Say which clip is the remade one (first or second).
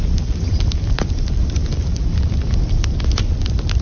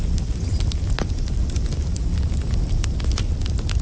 first